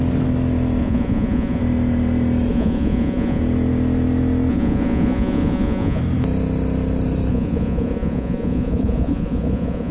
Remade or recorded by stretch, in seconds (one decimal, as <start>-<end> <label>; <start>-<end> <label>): 0.0-0.8 recorded; 0.8-1.6 remade; 1.6-2.5 recorded; 2.5-3.4 remade; 3.4-4.5 recorded; 4.5-6.0 remade; 6.0-7.3 recorded; 7.3-9.9 remade